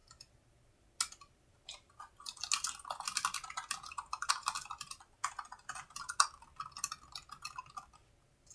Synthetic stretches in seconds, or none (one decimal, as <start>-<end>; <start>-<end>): none